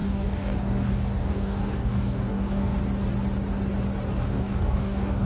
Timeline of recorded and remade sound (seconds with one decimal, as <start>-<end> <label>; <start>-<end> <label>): 0.0-2.8 remade; 2.8-4.2 recorded; 4.2-5.3 remade